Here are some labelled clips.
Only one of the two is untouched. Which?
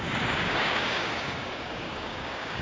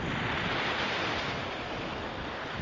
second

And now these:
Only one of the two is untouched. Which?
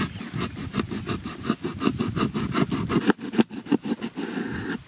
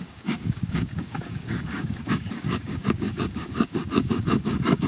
first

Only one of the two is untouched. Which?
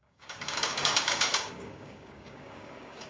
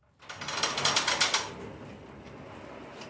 second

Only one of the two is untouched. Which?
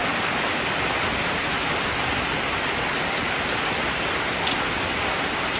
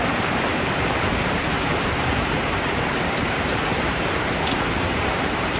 first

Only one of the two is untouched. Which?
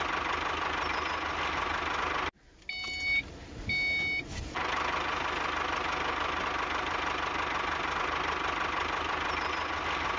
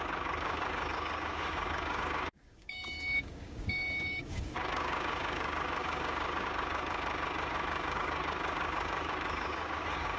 first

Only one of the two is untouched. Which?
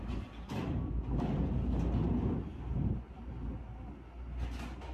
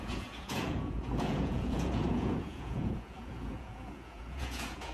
first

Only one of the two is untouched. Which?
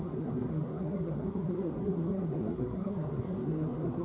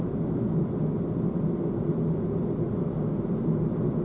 second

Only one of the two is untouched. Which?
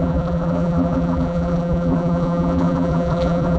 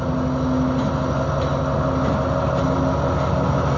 second